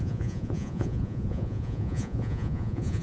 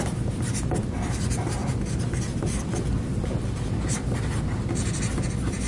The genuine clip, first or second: second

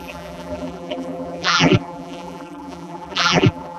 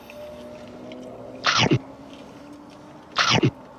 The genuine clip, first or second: second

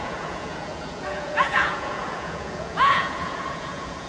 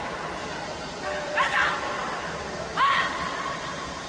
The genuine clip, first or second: second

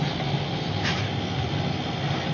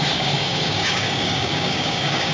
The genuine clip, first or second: first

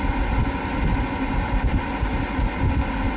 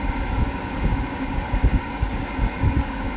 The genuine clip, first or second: first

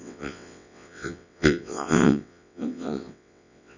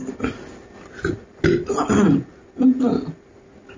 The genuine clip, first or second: second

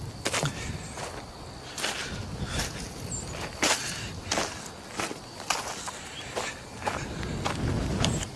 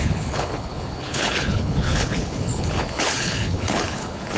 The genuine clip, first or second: first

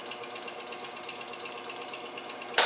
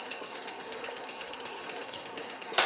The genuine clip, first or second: first